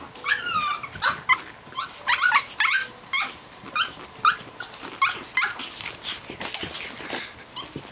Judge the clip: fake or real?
real